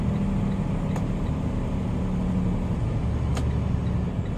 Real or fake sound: real